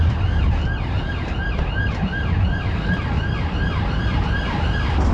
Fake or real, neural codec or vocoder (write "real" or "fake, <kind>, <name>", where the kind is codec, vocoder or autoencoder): real